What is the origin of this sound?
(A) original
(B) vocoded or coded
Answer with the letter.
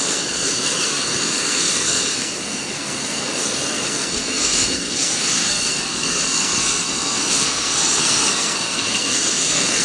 B